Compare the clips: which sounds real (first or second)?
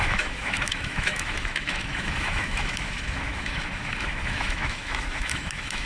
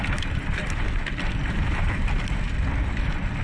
second